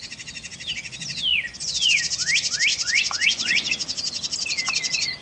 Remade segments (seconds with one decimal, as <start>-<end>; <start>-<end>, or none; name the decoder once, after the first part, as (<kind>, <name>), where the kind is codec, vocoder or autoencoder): 1.3-2.0 (vocoder, Vocos); 2.7-3.7